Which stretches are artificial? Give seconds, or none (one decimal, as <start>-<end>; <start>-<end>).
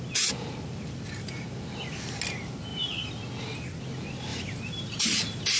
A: 2.7-3.2; 4.3-5.6